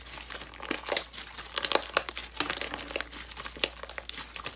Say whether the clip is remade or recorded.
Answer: recorded